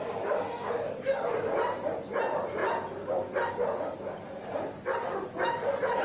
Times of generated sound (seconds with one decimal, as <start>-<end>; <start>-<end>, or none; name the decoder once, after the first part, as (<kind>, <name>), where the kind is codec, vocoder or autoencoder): none

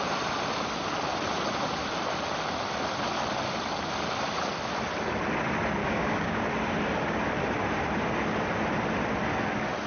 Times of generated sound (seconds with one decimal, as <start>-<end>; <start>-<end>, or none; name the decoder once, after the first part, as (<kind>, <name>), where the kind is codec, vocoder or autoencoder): 5.8-6.4 (codec, DAC)

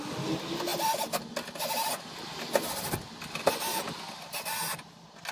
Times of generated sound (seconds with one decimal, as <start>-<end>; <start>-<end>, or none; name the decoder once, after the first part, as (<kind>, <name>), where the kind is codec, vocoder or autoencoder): none

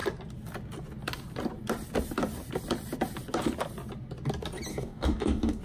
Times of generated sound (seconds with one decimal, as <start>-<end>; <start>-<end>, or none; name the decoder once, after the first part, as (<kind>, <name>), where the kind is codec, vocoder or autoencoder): 4.7-5.6 (codec, DAC)

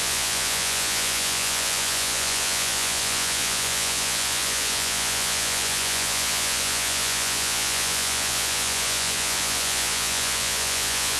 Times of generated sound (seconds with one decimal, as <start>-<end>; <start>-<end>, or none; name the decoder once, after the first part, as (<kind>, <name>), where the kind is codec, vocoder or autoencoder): 0.0-11.2 (vocoder, Vocos)

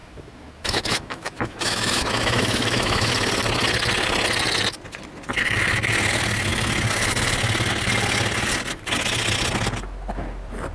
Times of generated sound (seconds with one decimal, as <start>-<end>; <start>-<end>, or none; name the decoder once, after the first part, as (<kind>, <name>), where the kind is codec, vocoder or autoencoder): 0.0-3.1 (autoencoder, DAC-VAE)

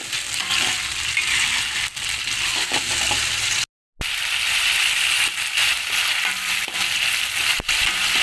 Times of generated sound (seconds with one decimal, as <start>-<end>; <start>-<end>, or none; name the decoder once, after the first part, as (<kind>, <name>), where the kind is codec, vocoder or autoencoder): none

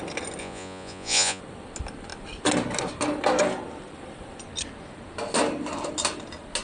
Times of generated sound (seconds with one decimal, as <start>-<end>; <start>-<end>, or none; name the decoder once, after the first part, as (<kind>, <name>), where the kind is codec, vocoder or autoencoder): 0.4-1.4 (vocoder, Vocos)